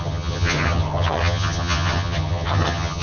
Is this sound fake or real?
fake